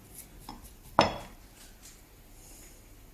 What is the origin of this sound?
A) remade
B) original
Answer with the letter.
B